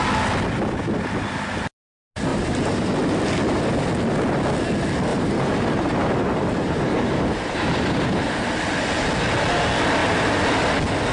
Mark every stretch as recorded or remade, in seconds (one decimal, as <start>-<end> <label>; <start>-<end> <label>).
0.0-2.3 recorded; 2.3-2.9 remade; 2.9-5.1 recorded; 5.1-8.5 remade; 8.5-10.0 recorded; 10.0-10.7 remade; 10.7-11.1 recorded